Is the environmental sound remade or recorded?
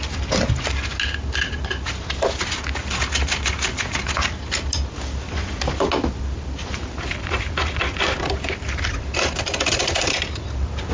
recorded